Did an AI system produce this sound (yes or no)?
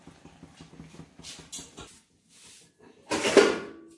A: no